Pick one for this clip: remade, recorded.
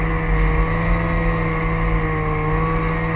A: recorded